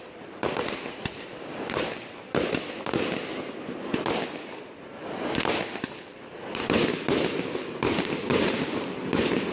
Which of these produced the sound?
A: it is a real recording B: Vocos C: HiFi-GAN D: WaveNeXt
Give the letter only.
A